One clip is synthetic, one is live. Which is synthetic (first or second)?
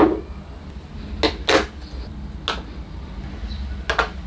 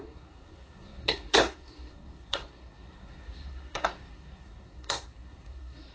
second